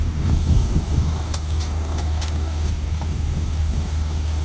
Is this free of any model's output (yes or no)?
no